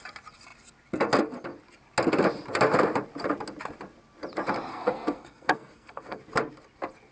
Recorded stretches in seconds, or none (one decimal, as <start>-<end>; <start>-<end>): 0.0-4.7; 6.2-7.1